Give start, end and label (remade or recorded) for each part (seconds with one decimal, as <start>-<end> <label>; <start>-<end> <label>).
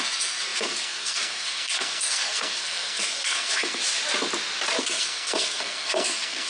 0.0-3.8 remade; 3.8-4.8 recorded; 4.8-6.5 remade